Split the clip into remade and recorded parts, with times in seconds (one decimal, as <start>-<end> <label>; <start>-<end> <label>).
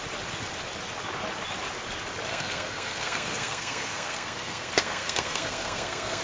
0.0-2.3 recorded; 2.3-6.2 remade